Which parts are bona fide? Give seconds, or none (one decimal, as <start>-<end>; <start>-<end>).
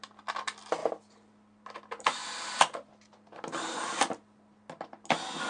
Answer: 0.0-5.5